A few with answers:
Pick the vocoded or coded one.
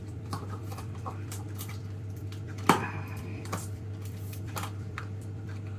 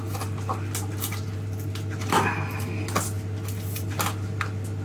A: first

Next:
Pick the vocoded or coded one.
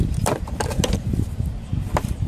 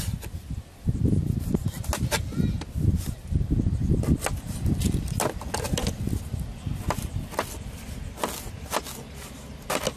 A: first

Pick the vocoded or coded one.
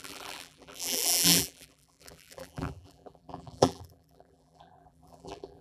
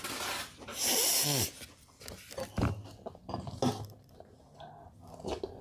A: first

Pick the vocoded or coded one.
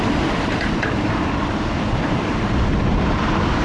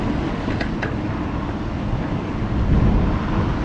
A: first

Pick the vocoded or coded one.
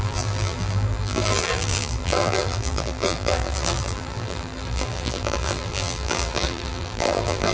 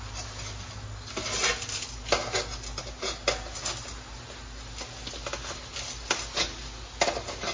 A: first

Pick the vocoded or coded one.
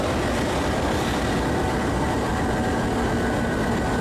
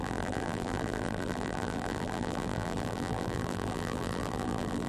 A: second